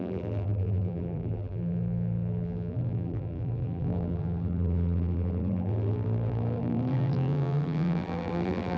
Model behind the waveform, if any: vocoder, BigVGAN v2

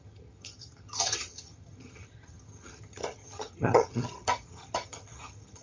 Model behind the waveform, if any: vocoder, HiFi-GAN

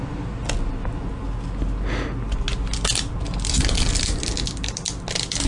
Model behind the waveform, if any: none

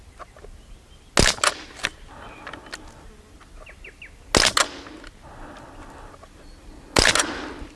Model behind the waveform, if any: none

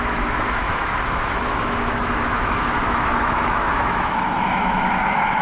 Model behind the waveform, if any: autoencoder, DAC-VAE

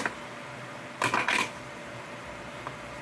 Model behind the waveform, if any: vocoder, BigVGAN v2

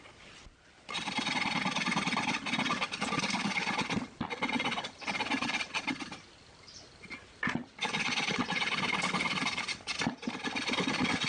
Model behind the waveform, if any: none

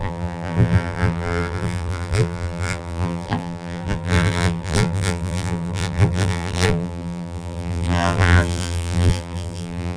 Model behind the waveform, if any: vocoder, BigVGAN v2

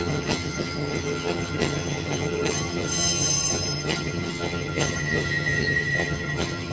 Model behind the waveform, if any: vocoder, HiFi-GAN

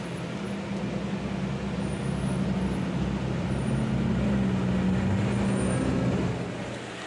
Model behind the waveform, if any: none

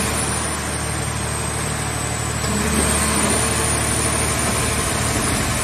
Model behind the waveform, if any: none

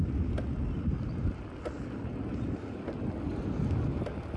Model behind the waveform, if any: none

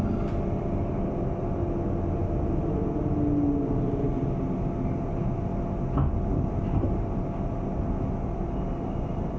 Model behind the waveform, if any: none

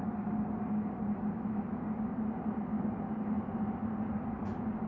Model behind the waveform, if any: none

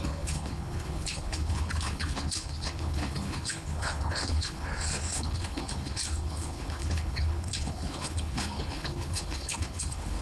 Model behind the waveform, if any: codec, HILCodec